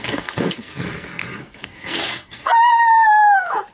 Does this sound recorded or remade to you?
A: remade